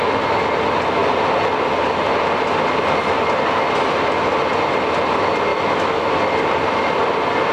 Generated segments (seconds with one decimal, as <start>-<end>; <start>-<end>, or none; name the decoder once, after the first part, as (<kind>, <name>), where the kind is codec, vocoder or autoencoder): 5.5-6.2 (autoencoder, DAC-VAE)